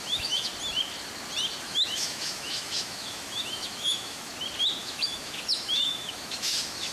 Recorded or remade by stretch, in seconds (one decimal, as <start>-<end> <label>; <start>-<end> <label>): 0.0-0.5 remade; 0.5-1.6 recorded; 1.6-4.3 remade; 4.3-4.8 recorded; 4.8-6.9 remade